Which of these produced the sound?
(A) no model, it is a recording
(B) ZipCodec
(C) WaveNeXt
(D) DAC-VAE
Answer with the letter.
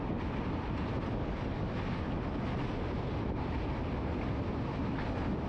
A